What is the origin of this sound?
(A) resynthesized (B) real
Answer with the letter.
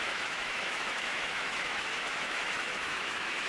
A